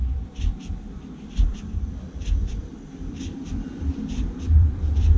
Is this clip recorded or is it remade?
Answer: remade